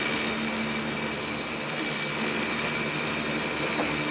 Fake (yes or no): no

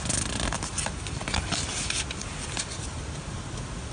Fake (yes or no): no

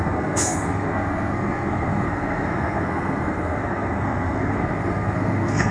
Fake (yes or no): yes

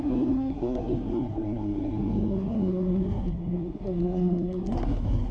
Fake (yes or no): yes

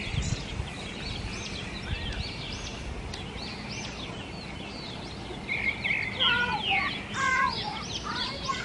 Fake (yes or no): no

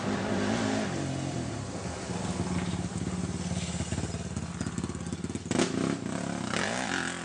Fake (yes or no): no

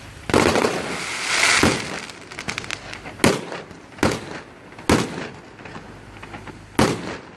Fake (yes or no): no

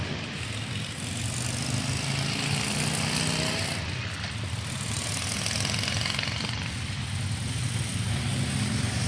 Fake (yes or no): no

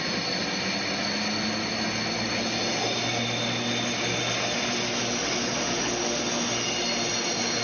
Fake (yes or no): no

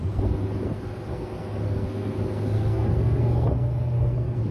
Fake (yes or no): yes